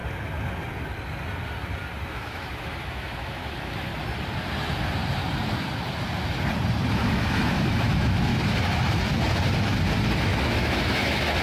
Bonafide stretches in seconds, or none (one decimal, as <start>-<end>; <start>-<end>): 0.0-2.1; 3.9-6.9; 8.3-10.2